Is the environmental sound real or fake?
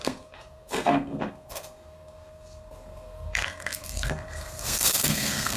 fake